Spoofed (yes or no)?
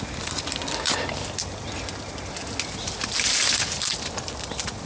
no